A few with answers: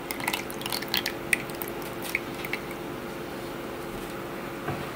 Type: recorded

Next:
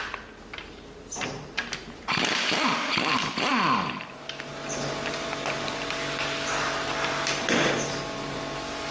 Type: recorded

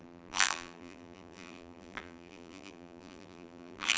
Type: remade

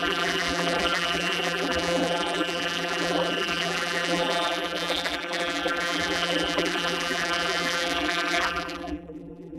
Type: remade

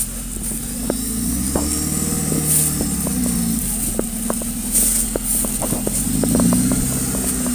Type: recorded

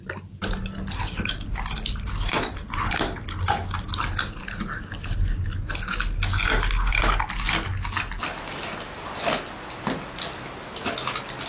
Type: recorded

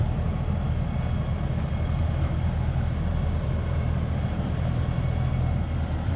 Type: recorded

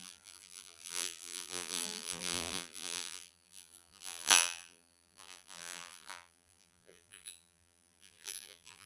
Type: remade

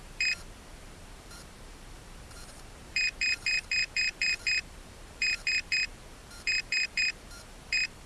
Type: remade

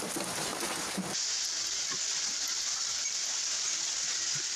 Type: recorded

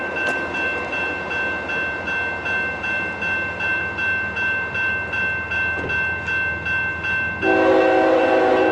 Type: recorded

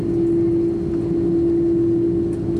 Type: recorded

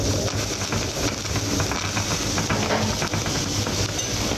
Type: recorded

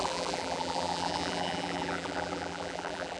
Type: remade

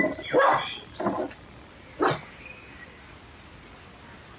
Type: recorded